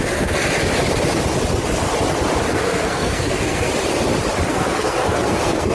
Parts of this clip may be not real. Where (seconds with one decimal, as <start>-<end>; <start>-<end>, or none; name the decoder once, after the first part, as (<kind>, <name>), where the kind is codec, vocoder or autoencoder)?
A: 0.0-0.4 (codec, SNAC); 2.5-3.7; 4.5-5.7

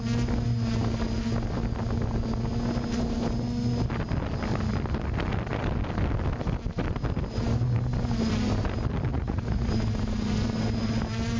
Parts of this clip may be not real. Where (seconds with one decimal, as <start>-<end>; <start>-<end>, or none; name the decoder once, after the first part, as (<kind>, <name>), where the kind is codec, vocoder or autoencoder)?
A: 9.1-9.7 (vocoder, Vocos)

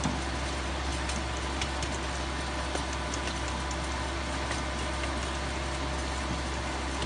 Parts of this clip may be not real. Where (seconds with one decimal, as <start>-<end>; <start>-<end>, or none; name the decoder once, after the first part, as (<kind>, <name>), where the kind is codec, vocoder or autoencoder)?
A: none